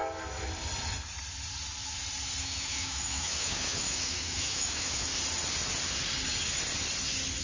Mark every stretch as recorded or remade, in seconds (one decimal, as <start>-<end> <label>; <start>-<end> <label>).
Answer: 0.0-2.4 recorded; 2.4-5.1 remade; 5.1-7.4 recorded